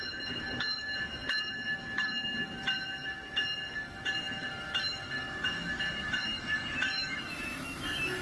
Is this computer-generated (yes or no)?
yes